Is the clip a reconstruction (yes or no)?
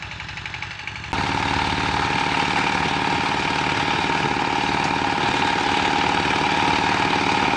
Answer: no